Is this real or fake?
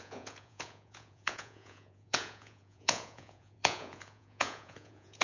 fake